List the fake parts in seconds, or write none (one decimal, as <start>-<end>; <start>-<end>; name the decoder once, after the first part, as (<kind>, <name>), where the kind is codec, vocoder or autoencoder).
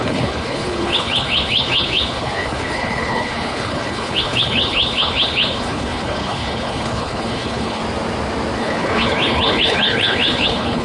0.0-7.8 (codec, HILCodec); 8.6-10.8